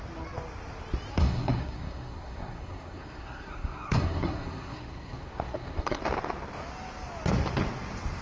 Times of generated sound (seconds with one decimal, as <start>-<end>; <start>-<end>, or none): 1.1-6.0